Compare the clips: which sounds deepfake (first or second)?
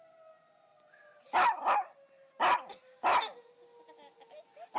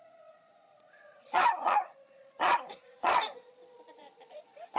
second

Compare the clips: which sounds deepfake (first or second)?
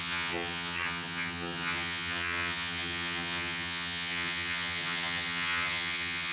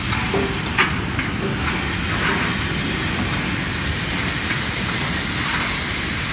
first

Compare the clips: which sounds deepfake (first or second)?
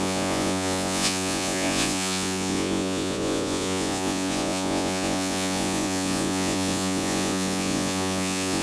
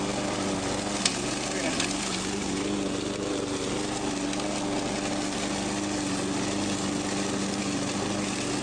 first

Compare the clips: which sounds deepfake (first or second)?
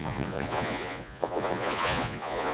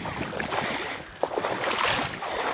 first